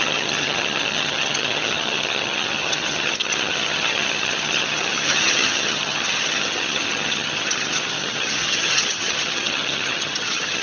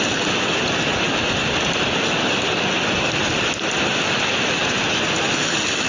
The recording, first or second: second